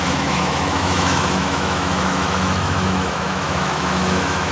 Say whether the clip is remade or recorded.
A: remade